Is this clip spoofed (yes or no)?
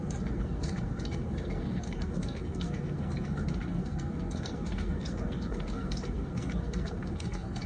yes